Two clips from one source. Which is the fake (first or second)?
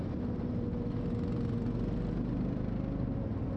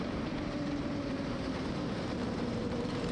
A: second